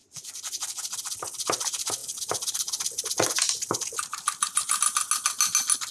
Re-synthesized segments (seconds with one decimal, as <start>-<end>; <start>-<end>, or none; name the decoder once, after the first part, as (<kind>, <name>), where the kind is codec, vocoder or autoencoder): 0.0-1.0 (vocoder, BigVGAN v2); 2.0-4.8